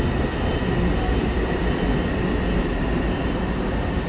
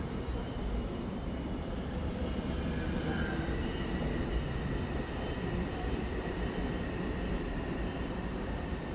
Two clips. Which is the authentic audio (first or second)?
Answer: first